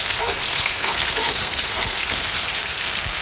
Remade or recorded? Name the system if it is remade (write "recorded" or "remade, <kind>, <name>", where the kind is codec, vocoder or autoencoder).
remade, codec, SNAC